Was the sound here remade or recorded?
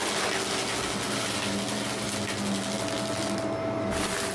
recorded